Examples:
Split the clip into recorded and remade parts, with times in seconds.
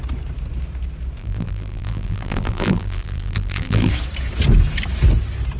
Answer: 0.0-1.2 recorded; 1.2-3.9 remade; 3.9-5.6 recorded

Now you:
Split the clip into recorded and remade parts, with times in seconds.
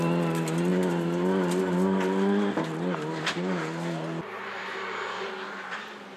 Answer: 0.0-6.2 recorded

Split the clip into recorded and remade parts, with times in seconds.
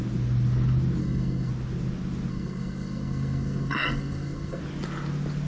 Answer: 0.0-1.0 recorded; 1.0-1.5 remade; 1.5-2.3 recorded; 2.3-4.6 remade; 4.6-5.5 recorded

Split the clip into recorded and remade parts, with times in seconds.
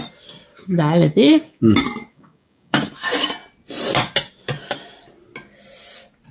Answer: 0.0-0.5 recorded; 0.5-1.6 remade; 1.6-2.1 recorded; 2.1-2.9 remade; 2.9-6.3 recorded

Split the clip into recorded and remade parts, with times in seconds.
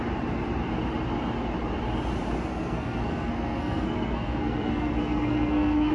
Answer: 0.0-2.5 recorded; 2.5-5.9 remade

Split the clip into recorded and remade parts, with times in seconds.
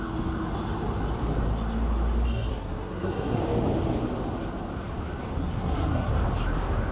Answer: 0.0-2.5 recorded; 2.5-3.4 remade; 3.4-5.4 recorded; 5.4-6.1 remade; 6.1-6.9 recorded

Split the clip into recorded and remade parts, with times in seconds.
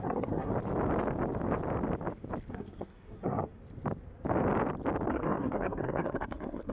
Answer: 0.0-0.5 remade; 0.5-2.5 recorded; 2.5-3.6 remade; 3.6-5.1 recorded; 5.1-6.7 remade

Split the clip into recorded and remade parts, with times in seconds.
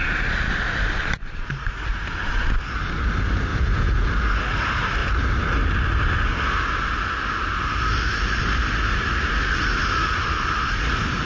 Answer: 0.0-3.5 recorded; 3.5-4.1 remade; 4.1-11.3 recorded